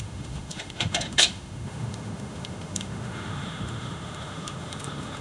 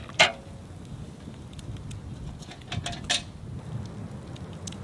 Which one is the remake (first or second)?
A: first